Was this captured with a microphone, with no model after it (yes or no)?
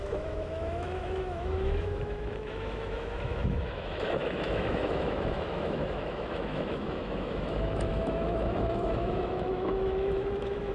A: no